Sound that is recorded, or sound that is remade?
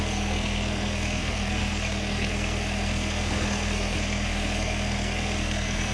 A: remade